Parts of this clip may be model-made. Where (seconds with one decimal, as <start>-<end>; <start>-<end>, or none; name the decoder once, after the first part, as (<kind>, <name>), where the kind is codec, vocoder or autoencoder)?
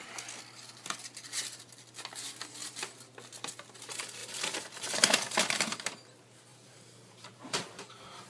4.2-5.4 (vocoder, BigVGAN v2); 6.5-7.9